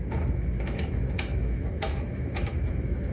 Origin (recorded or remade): remade